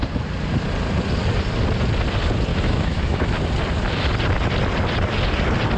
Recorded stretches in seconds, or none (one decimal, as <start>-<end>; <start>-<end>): 0.0-2.5; 3.4-5.8